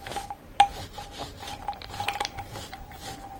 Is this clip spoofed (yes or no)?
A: yes